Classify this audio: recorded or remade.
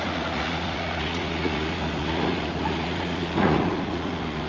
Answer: remade